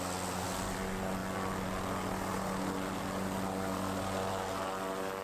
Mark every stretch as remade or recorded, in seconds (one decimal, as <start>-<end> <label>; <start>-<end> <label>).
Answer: 0.0-5.2 recorded